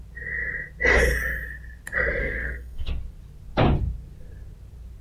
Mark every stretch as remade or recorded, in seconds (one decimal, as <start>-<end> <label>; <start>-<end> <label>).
0.0-2.2 recorded; 2.2-2.9 remade; 2.9-5.0 recorded